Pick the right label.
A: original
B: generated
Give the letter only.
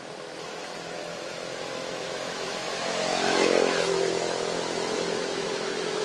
B